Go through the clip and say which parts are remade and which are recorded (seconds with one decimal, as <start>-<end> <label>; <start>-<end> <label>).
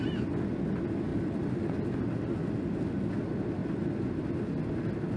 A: 0.0-1.1 recorded; 1.1-2.0 remade; 2.0-3.6 recorded; 3.6-4.2 remade; 4.2-5.2 recorded